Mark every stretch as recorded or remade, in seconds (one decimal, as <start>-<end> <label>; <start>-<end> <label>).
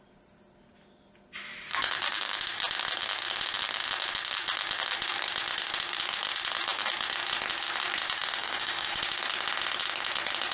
0.0-8.4 recorded; 8.4-9.0 remade; 9.0-10.5 recorded